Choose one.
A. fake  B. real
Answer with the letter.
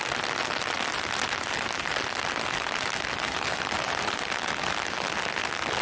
B